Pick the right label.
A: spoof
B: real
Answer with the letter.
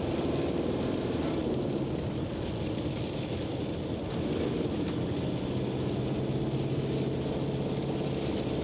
B